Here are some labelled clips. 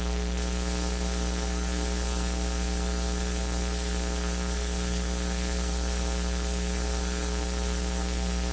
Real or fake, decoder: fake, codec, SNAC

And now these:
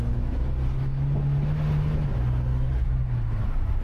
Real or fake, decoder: real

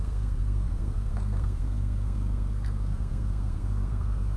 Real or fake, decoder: fake, codec, SNAC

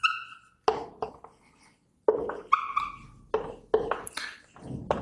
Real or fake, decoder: real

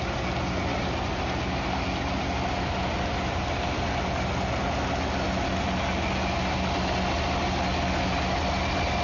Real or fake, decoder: real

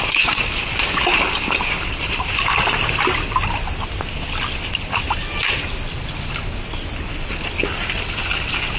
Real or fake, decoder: real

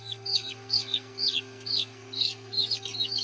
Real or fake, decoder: fake, codec, SNAC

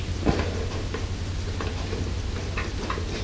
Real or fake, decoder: real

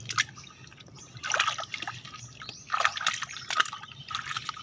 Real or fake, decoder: real